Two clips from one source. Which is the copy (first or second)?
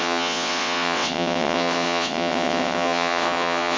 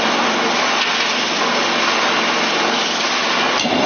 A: first